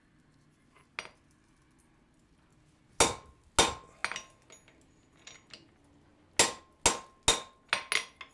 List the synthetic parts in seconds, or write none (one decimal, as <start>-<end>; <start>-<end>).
none